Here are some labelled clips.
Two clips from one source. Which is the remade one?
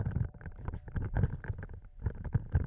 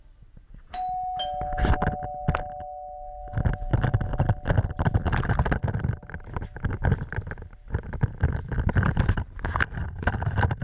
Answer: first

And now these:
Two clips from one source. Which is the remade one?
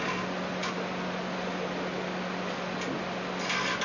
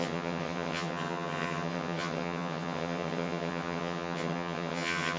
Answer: second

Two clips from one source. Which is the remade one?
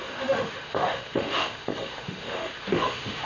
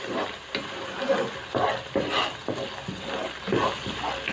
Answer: first